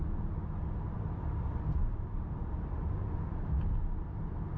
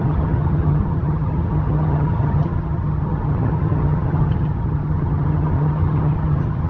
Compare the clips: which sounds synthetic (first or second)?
second